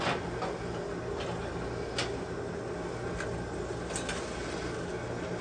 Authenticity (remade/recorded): recorded